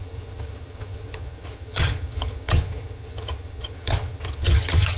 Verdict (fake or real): fake